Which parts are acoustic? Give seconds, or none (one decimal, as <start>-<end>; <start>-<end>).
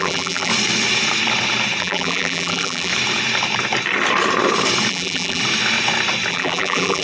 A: 0.5-1.8; 2.9-4.9; 5.4-6.3